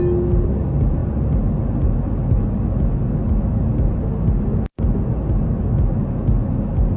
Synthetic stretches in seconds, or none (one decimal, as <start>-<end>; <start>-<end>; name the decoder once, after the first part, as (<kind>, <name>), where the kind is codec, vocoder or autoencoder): none